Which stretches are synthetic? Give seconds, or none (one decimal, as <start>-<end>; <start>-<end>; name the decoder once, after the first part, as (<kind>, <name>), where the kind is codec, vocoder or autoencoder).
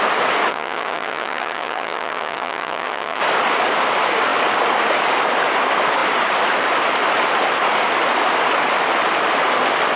0.5-3.2 (vocoder, HiFi-GAN)